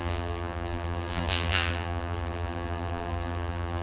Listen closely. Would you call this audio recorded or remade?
remade